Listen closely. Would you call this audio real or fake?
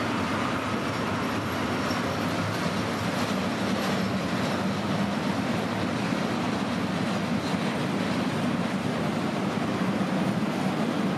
real